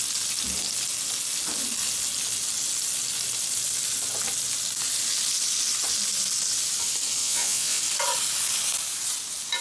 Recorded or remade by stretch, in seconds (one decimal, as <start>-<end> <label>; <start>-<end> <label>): 0.0-7.2 recorded; 7.2-7.8 remade; 7.8-9.6 recorded